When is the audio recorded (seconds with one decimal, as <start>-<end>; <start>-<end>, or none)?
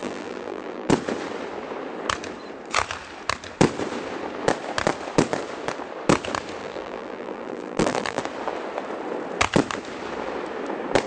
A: 0.9-6.6; 8.2-11.1